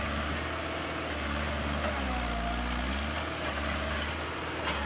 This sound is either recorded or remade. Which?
recorded